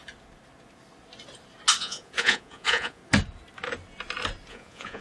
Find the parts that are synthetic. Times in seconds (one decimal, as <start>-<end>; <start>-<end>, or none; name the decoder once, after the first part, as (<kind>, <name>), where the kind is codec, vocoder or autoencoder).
1.8-3.0 (vocoder, Vocos); 4.5-5.0